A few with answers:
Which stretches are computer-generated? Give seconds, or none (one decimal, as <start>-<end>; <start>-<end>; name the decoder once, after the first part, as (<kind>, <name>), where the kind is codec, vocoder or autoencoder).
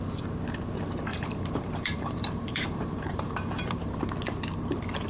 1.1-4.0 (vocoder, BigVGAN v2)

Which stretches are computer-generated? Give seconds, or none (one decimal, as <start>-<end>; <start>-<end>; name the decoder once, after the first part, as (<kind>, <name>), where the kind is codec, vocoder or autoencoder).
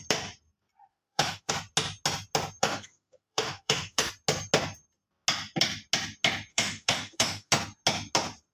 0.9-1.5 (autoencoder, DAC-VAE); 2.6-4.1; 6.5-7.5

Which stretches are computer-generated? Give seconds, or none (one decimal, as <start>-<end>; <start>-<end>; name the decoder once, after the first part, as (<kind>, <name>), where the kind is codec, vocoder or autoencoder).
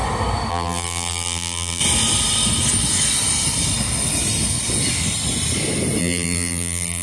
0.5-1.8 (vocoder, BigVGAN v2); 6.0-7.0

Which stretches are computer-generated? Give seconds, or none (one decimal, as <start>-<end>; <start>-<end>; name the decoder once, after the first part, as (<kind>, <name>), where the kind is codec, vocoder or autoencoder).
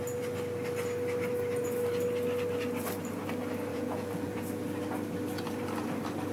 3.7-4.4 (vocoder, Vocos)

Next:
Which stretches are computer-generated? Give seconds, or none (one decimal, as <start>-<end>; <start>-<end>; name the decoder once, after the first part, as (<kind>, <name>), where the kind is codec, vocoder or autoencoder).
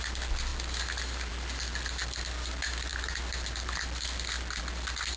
none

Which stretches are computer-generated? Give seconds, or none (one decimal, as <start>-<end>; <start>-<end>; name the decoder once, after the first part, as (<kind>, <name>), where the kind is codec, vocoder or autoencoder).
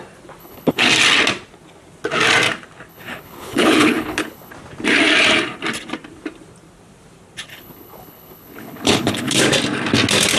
0.4-0.9 (codec, HILCodec); 2.9-4.5; 7.5-9.4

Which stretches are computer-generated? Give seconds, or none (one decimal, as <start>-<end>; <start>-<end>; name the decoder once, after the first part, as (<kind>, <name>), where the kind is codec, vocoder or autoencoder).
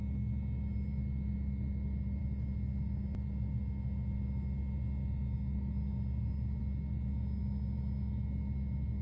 none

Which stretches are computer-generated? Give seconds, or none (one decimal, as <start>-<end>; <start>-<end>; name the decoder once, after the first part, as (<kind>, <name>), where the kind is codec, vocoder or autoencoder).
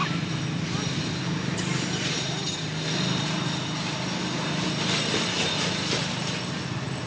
none